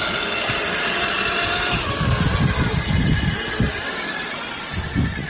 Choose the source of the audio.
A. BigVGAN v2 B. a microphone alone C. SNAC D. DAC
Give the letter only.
B